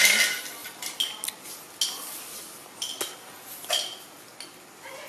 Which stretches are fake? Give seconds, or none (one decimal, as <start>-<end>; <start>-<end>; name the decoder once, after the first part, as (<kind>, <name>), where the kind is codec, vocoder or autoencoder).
none